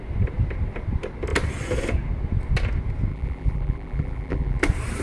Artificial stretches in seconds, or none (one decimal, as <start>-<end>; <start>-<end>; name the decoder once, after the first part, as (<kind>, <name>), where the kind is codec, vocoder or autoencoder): 3.1-4.6 (vocoder, BigVGAN v2)